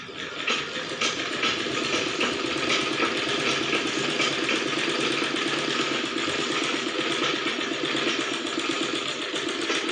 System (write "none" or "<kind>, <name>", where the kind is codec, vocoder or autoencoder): none